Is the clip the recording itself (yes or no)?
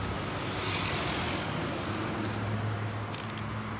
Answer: yes